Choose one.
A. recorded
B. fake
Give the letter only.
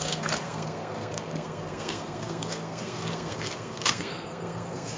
B